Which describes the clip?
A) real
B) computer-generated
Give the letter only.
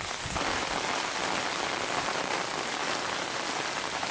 A